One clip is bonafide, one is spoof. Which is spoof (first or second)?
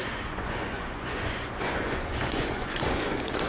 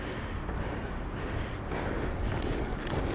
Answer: first